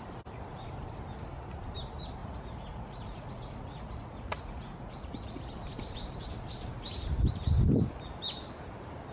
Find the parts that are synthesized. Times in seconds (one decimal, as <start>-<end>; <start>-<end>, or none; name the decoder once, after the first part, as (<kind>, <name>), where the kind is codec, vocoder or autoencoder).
2.2-5.4 (vocoder, Vocos)